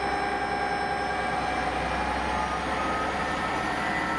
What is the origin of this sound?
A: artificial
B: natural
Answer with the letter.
B